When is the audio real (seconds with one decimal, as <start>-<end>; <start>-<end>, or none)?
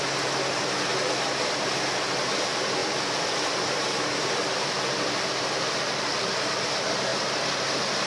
0.0-2.8; 6.2-8.1